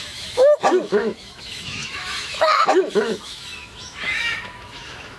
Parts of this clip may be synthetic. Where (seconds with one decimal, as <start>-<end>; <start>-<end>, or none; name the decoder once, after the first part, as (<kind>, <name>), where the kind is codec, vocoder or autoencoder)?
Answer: 0.0-5.2 (autoencoder, DAC-VAE)